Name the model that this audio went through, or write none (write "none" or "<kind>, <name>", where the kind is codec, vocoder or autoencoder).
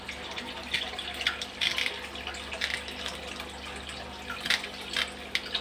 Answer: none